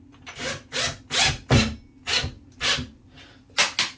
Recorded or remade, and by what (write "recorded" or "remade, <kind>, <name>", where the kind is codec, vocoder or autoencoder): recorded